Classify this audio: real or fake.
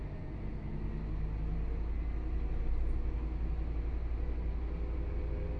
real